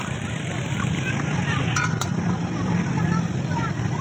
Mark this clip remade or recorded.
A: remade